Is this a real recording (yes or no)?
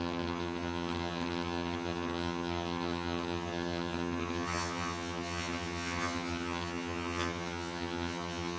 no